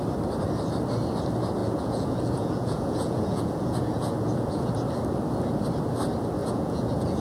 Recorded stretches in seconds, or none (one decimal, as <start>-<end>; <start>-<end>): 0.0-1.6; 4.7-6.4